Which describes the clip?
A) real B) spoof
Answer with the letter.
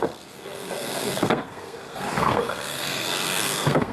B